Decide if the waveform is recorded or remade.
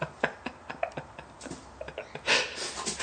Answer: recorded